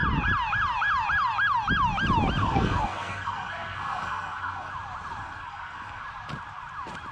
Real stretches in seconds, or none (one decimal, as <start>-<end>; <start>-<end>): 0.0-2.4; 4.7-5.2; 6.0-7.1